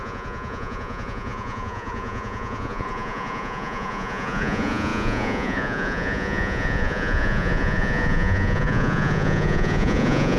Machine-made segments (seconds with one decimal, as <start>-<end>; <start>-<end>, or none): 0.0-10.4